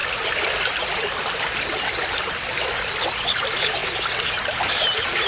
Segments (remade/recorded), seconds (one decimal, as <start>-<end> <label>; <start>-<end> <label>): 0.0-5.3 remade